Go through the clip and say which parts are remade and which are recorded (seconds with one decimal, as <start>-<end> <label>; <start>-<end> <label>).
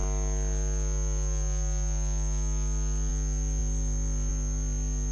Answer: 0.0-5.1 recorded